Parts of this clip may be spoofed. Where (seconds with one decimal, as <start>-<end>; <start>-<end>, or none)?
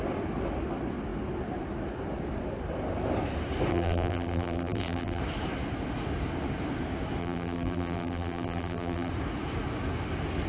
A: 3.7-5.2; 7.2-9.1